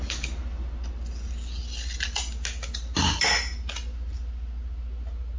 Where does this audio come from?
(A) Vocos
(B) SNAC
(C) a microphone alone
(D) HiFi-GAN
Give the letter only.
C